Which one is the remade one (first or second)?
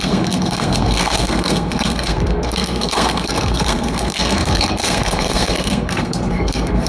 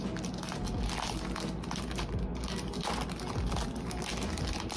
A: first